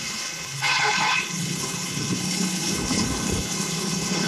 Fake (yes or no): yes